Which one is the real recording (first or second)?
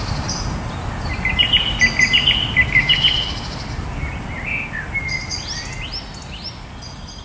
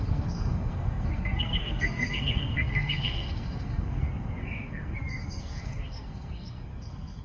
first